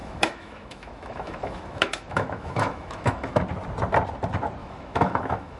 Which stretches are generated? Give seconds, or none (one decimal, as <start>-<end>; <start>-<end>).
0.0-3.4; 4.6-5.6